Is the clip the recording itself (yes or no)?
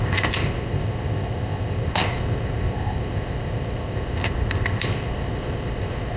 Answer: no